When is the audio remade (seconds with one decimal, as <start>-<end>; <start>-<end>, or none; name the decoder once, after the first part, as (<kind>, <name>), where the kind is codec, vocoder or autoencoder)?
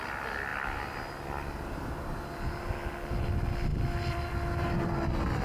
3.7-4.7 (vocoder, BigVGAN v2)